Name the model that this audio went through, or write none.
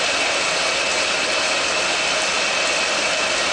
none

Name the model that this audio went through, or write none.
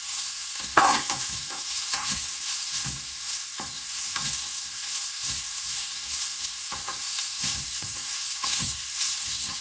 codec, SNAC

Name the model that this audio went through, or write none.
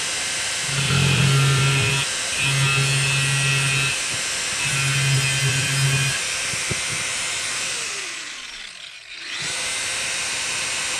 none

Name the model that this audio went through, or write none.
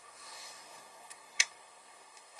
codec, SNAC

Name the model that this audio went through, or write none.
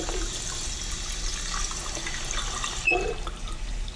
none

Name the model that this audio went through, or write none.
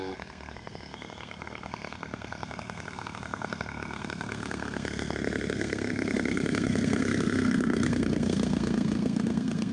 codec, SNAC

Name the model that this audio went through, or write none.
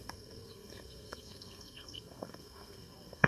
codec, SNAC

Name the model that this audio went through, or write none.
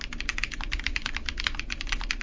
none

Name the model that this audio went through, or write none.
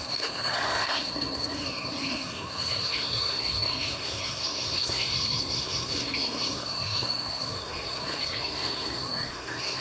codec, SNAC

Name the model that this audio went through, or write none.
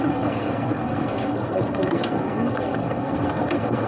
codec, SNAC